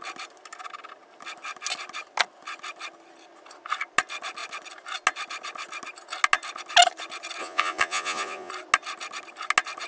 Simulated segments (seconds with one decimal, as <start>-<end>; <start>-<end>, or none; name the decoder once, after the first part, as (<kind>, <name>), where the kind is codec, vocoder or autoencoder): 7.4-8.5 (vocoder, Vocos)